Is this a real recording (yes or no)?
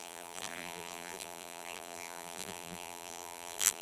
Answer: no